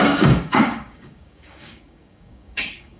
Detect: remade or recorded remade